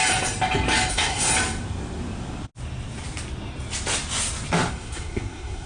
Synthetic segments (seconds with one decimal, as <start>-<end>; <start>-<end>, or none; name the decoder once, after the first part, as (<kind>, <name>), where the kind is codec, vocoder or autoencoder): 0.9-1.3 (codec, SNAC); 4.7-5.7